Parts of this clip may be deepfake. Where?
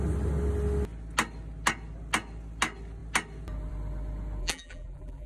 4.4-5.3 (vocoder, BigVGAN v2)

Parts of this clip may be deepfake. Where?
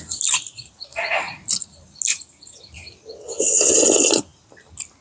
2.1-2.6 (vocoder, Vocos)